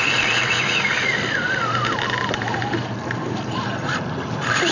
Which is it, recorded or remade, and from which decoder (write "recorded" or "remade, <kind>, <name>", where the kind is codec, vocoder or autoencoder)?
recorded